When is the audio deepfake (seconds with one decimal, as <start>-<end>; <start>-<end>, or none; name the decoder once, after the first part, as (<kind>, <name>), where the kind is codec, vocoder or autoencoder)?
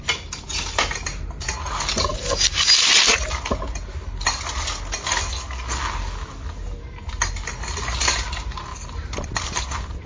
none